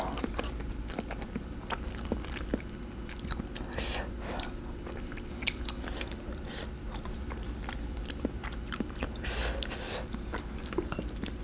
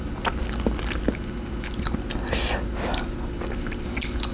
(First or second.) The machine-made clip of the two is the first